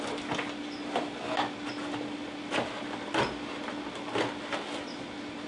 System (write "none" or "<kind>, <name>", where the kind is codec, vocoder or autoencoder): none